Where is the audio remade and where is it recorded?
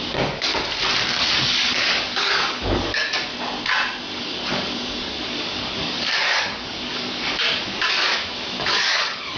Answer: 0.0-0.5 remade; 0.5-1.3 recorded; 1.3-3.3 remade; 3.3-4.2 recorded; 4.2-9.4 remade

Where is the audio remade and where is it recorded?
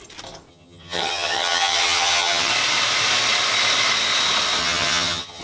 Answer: 0.0-0.5 recorded; 0.5-2.5 remade; 2.5-4.6 recorded; 4.6-5.4 remade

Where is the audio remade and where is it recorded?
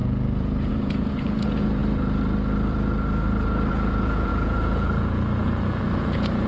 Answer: 0.0-1.8 remade; 1.8-3.7 recorded; 3.7-6.5 remade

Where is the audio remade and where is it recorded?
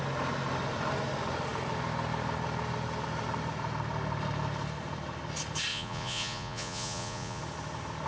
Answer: 0.0-5.7 recorded; 5.7-7.4 remade; 7.4-8.1 recorded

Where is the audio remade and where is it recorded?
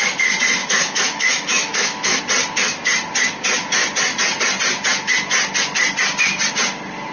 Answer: 0.0-0.6 recorded; 0.6-2.2 remade; 2.2-7.1 recorded